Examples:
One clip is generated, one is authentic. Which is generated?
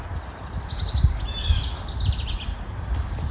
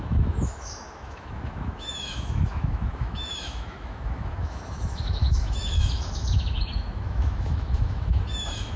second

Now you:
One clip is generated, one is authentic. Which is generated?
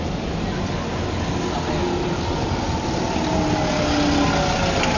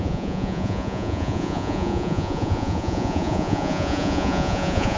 second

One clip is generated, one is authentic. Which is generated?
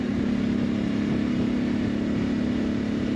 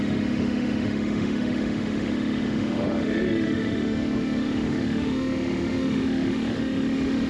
second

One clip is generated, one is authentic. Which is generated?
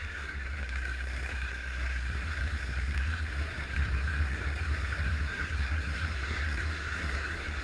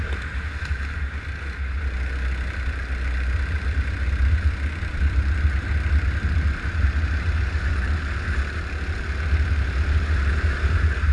first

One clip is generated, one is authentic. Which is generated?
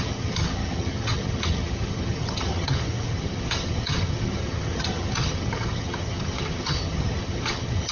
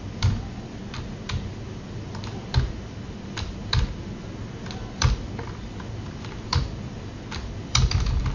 first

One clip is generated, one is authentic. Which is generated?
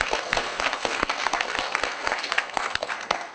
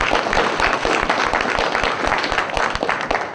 first